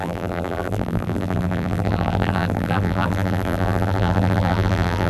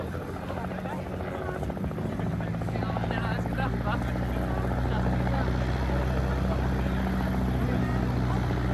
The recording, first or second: second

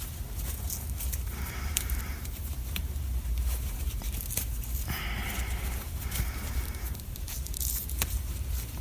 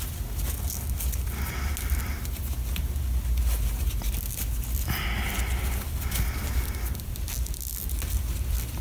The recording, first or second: second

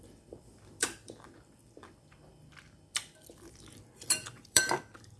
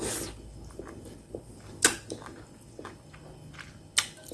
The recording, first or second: second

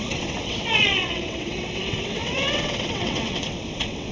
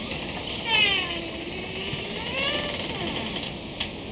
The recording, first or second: second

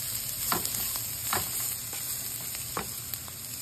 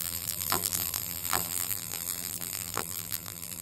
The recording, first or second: first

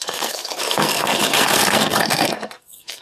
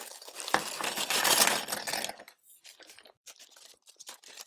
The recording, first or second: second